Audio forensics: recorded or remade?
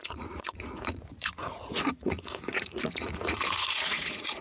remade